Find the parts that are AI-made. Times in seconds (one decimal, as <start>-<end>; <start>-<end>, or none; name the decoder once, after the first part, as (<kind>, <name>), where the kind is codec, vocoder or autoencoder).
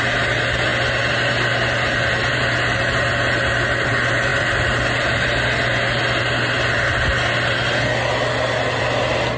none